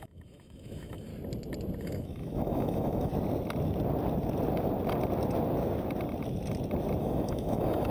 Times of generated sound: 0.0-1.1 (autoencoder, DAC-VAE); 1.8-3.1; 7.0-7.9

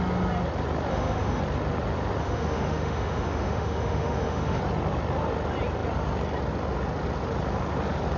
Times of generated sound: 0.9-1.4 (autoencoder, DAC-VAE); 2.2-4.6

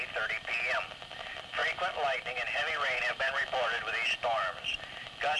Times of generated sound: none